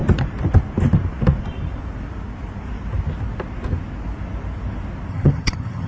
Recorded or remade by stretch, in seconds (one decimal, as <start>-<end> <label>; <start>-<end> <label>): 0.0-5.1 recorded; 5.1-5.9 remade